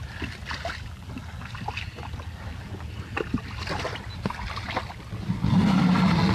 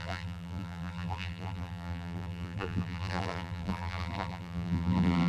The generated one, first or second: second